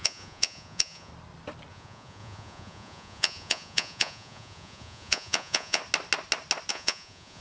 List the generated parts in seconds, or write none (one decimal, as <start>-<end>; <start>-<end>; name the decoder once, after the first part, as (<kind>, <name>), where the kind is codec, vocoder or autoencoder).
0.0-1.1 (vocoder, Vocos); 1.7-5.8; 6.7-7.4